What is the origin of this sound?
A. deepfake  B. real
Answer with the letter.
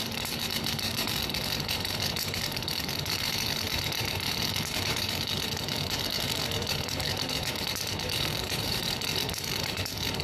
A